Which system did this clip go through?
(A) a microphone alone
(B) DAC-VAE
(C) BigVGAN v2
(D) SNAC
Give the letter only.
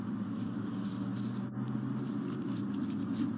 A